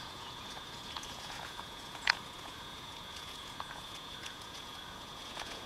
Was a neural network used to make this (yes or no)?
yes